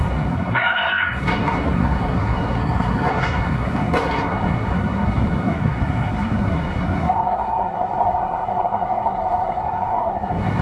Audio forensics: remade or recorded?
remade